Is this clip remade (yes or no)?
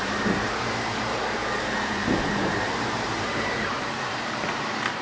yes